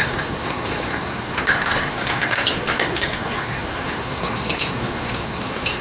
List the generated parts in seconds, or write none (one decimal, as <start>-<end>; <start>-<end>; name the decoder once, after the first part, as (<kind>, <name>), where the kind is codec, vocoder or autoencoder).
0.0-5.8 (codec, SNAC)

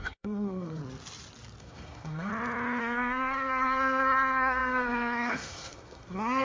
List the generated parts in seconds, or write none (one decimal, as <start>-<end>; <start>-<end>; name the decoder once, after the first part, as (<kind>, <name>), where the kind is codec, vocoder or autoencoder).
0.0-0.8 (codec, SNAC); 1.6-2.3; 2.8-6.4

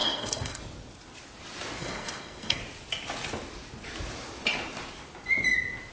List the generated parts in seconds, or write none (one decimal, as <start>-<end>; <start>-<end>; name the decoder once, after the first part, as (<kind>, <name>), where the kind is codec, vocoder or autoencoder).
0.0-0.6 (codec, SNAC); 1.8-2.6